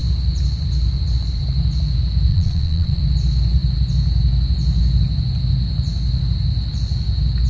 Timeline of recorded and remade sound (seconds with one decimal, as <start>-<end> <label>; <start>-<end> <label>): 0.0-2.3 recorded; 2.3-3.0 remade; 3.0-7.5 recorded